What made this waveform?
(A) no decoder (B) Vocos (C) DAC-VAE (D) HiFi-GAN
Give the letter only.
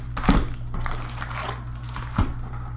A